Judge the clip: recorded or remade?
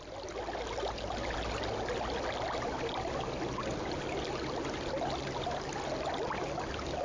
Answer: recorded